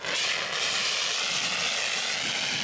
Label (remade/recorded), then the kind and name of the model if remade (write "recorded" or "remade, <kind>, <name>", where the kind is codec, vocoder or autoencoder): recorded